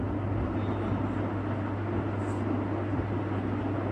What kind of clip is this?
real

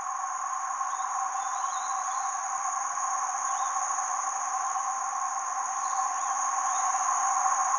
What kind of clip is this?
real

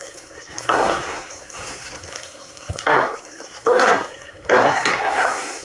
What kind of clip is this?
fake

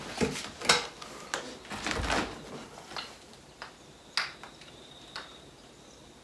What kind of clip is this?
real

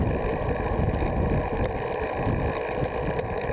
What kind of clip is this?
real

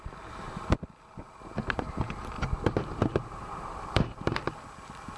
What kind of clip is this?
real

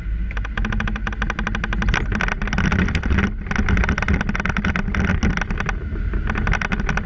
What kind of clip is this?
real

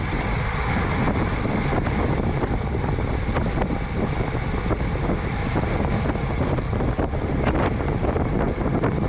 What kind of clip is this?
real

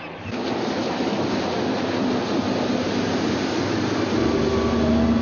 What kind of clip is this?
real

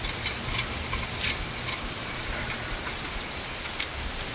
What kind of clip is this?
real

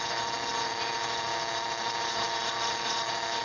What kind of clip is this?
real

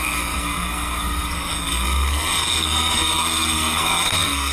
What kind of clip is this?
fake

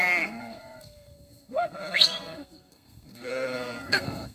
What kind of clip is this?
fake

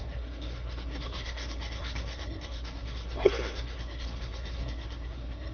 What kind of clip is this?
fake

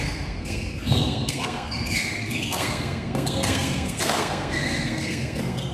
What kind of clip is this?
fake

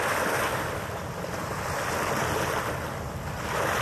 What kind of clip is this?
real